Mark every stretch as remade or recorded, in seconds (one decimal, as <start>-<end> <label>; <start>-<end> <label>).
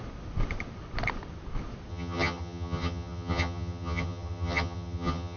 0.0-1.9 recorded; 1.9-5.4 remade